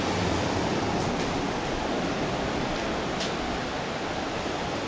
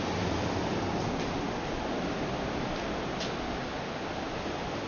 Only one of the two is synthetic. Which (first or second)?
first